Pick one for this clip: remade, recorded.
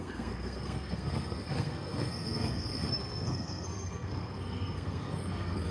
remade